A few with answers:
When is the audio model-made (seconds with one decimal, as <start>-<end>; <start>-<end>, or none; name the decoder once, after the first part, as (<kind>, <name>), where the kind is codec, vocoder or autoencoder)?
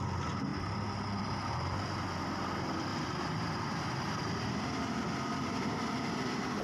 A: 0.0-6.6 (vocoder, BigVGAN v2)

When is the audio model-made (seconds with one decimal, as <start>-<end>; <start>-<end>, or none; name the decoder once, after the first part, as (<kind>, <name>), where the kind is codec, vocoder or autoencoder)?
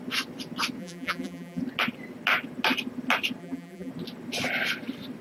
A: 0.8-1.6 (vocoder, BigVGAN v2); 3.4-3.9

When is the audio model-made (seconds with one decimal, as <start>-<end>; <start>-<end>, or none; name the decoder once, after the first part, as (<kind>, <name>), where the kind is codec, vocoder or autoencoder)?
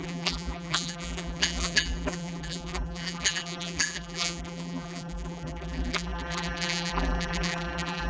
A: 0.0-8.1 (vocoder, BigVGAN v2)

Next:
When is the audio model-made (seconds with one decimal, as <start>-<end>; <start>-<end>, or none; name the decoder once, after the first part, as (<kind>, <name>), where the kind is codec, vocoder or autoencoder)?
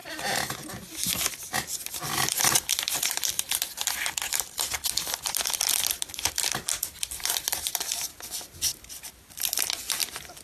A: 1.8-10.4 (vocoder, BigVGAN v2)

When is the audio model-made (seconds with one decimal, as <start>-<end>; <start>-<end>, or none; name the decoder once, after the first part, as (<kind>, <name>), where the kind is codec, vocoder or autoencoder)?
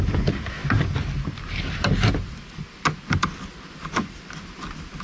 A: none